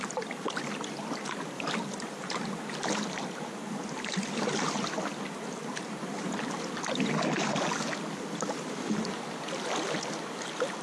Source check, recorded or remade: recorded